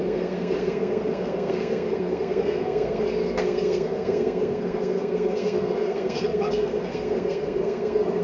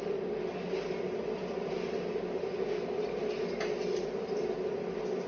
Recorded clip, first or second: second